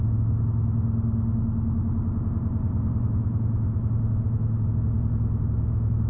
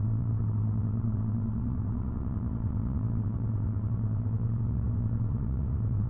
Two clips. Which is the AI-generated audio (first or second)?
second